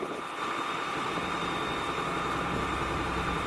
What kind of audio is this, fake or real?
real